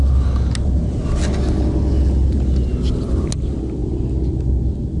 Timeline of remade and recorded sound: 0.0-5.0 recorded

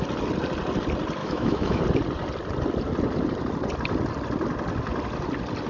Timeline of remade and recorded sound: 0.0-1.2 recorded; 1.2-1.8 remade; 1.8-5.7 recorded

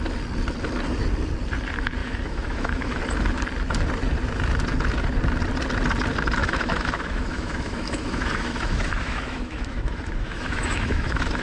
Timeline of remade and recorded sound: 0.0-2.0 recorded; 2.0-3.0 remade; 3.0-6.4 recorded; 6.4-11.4 remade